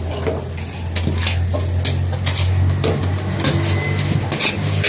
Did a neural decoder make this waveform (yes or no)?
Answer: no